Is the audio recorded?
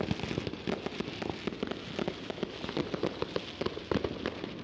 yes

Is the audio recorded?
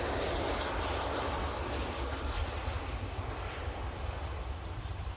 yes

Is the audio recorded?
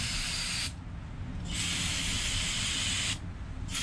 yes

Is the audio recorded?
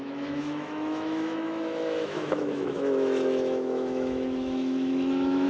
no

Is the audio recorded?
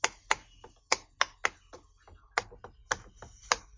yes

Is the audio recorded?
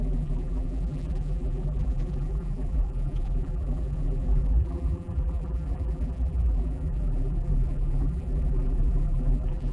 no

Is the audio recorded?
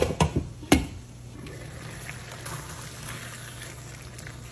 yes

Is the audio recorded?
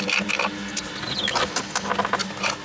yes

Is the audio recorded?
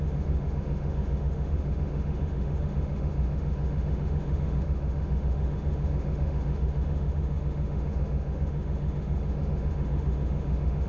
no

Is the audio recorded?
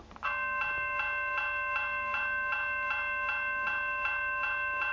yes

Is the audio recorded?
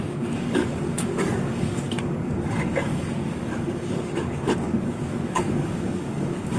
no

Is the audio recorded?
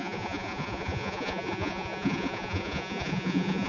no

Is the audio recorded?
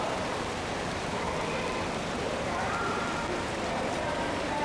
no